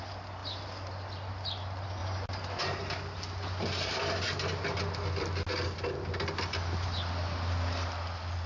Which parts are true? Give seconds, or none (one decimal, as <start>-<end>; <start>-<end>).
0.0-8.5